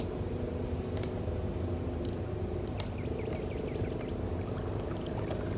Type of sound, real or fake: real